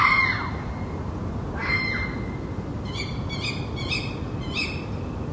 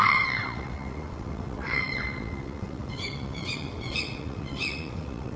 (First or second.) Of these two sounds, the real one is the first